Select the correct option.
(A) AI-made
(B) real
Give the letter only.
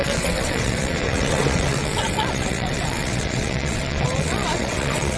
A